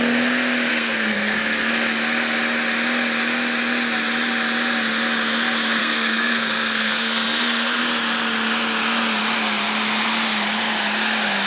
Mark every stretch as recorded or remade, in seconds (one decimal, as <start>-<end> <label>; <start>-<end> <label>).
0.0-0.7 recorded; 0.7-1.7 remade; 1.7-5.8 recorded; 5.8-7.8 remade; 7.8-11.5 recorded